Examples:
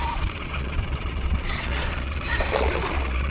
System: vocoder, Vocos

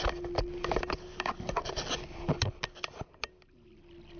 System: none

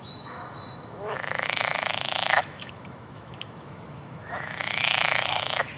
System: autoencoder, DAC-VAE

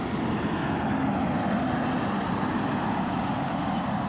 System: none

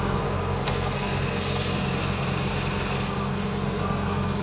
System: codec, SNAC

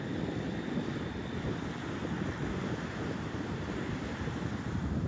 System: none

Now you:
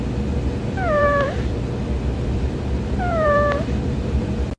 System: vocoder, BigVGAN v2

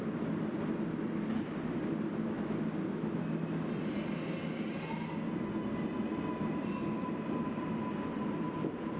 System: none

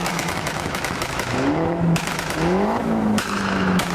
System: autoencoder, DAC-VAE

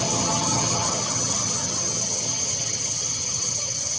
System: vocoder, HiFi-GAN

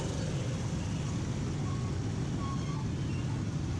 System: none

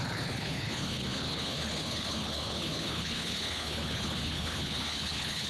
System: codec, HILCodec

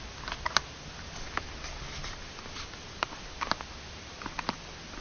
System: none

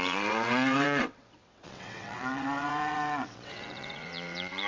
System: vocoder, WaveNeXt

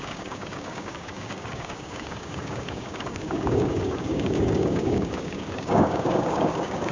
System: codec, DAC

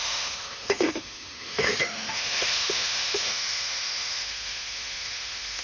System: autoencoder, DAC-VAE